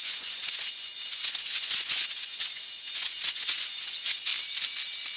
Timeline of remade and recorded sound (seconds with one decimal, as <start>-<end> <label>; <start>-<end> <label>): 0.0-4.3 remade; 4.3-5.2 recorded